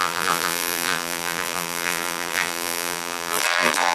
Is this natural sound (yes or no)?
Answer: no